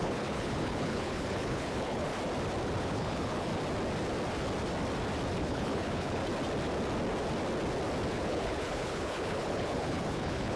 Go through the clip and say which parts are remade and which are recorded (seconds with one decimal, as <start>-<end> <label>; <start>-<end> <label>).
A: 0.0-2.1 remade; 2.1-2.8 recorded; 2.8-3.5 remade; 3.5-5.4 recorded; 5.4-6.2 remade; 6.2-8.1 recorded; 8.1-10.6 remade